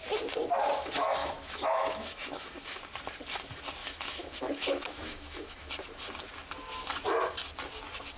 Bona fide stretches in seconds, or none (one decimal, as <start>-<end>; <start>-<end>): 0.0-1.2; 2.8-3.8; 5.7-8.2